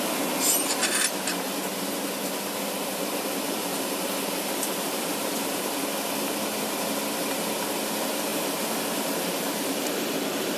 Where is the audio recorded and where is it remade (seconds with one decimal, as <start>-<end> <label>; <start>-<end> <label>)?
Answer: 0.0-3.7 recorded; 3.7-5.7 remade; 5.7-8.3 recorded; 8.3-10.6 remade